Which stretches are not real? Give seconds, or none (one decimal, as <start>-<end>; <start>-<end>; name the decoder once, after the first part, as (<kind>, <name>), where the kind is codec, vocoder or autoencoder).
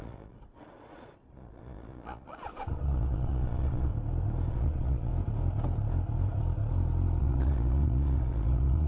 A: 0.0-3.9 (vocoder, Vocos); 4.5-5.1; 7.2-8.9